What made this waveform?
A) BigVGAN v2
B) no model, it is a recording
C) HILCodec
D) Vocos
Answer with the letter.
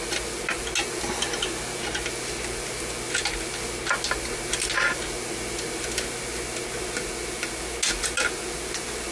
B